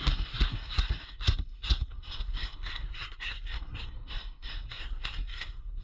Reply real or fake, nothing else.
fake